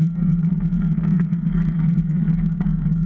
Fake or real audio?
fake